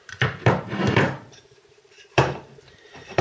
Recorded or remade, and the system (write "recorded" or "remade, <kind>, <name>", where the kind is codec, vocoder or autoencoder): remade, vocoder, BigVGAN v2